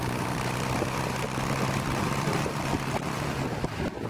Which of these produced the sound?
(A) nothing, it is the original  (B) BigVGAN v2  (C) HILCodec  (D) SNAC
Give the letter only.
B